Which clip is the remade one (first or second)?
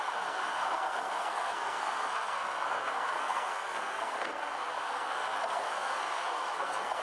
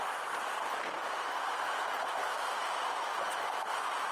first